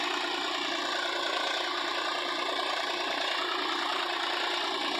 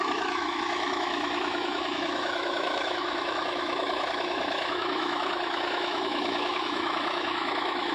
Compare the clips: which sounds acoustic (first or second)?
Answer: first